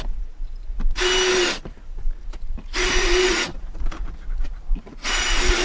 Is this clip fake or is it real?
fake